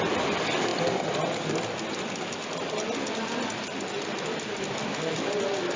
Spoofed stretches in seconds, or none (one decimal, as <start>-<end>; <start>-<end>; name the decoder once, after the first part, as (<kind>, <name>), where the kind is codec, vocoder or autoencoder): none